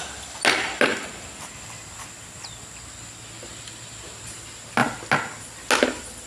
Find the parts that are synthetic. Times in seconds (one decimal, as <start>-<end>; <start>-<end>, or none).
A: none